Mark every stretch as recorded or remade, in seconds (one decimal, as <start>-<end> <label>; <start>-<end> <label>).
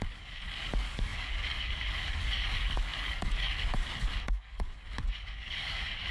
0.0-6.1 remade